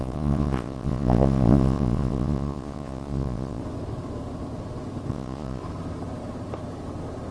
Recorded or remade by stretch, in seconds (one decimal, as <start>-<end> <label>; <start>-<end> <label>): 0.0-3.6 remade; 3.6-5.1 recorded; 5.1-5.6 remade; 5.6-7.3 recorded